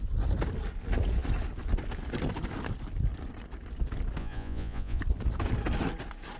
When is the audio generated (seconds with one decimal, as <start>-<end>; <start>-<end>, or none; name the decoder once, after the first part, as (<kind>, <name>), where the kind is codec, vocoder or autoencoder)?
4.2-5.0 (vocoder, Vocos)